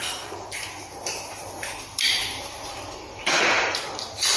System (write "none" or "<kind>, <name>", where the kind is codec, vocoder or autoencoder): vocoder, BigVGAN v2